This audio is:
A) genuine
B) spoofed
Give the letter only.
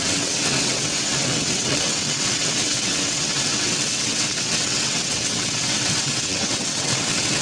B